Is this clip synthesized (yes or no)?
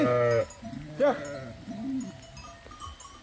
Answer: no